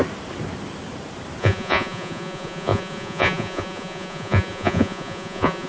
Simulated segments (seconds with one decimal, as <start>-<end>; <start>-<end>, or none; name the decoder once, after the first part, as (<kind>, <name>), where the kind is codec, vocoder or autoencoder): 1.4-5.7 (vocoder, Vocos)

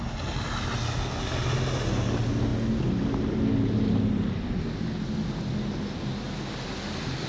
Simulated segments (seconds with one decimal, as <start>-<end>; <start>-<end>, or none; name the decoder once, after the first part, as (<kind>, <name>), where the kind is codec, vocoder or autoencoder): none